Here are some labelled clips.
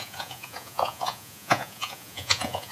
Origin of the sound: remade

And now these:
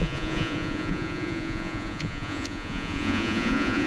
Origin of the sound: remade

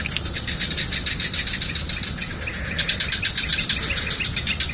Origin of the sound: recorded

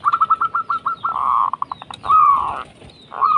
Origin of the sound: recorded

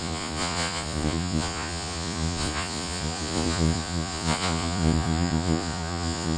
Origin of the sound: remade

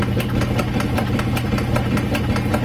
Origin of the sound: recorded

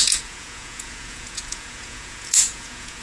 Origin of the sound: remade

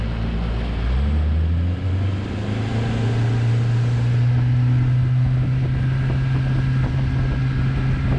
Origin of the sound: recorded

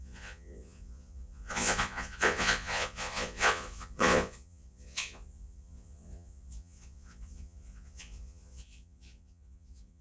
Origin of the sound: remade